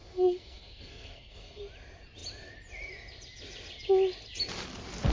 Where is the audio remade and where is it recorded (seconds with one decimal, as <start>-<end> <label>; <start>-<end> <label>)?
0.0-1.6 remade; 1.6-5.1 recorded